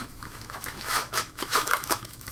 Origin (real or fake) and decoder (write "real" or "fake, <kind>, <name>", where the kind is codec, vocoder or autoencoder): fake, autoencoder, DAC-VAE